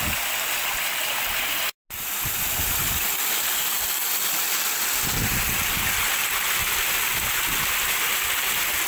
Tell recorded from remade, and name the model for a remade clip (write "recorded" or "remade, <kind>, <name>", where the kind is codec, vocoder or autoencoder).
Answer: recorded